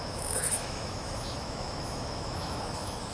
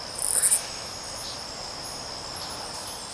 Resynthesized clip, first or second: first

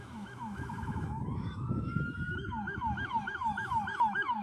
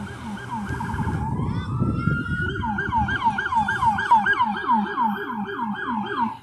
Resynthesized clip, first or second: first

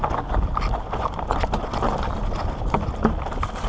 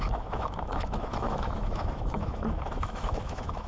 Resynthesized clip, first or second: second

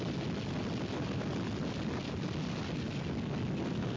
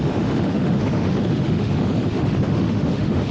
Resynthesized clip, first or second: second